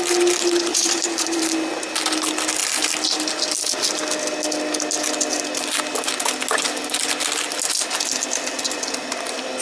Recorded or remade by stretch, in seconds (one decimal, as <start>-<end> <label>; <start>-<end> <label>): 0.0-0.7 recorded; 0.7-1.4 remade; 1.4-9.6 recorded